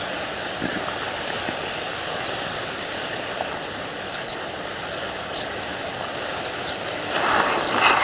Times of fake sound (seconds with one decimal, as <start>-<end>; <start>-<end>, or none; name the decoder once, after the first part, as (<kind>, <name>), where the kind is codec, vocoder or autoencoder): none